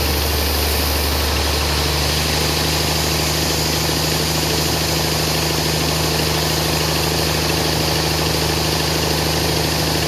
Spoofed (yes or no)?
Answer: no